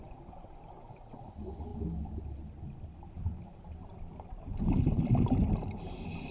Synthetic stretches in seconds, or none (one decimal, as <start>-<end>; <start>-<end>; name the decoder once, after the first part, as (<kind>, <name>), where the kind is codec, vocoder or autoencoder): none